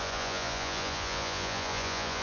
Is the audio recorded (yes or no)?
no